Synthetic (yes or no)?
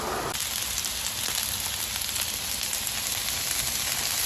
no